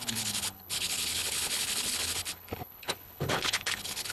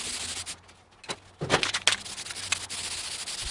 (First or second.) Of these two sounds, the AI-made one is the first